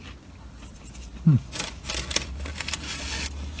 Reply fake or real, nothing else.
real